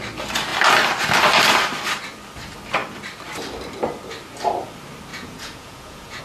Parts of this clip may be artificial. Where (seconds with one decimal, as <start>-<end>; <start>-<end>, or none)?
5.1-6.2